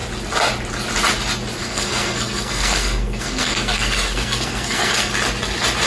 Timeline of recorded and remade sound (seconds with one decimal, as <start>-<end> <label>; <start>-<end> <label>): 0.0-1.6 recorded; 1.6-5.1 remade; 5.1-5.9 recorded